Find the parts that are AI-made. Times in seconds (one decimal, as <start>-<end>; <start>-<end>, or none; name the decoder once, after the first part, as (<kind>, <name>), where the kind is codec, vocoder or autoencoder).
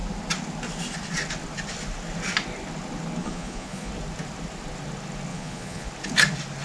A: 3.2-3.9 (vocoder, Vocos); 5.3-5.9